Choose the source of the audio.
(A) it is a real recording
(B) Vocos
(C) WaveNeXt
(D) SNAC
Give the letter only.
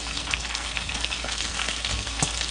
D